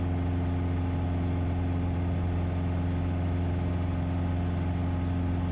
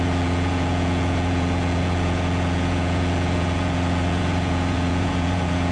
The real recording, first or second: first